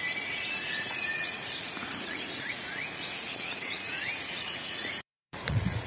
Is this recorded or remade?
remade